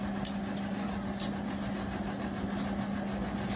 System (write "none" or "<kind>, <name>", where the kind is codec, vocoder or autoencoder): none